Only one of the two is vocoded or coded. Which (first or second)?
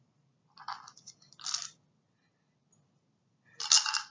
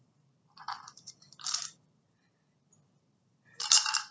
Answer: second